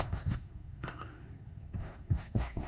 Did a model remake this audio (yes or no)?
yes